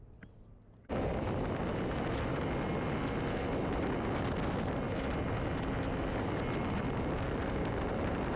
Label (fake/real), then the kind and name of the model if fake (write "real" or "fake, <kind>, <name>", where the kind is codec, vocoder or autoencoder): real